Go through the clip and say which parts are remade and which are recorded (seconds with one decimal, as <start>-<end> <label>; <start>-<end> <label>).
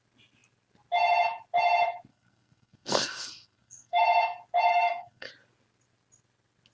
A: 0.0-2.1 recorded; 2.1-4.0 remade; 4.0-4.7 recorded; 4.7-5.3 remade; 5.3-6.7 recorded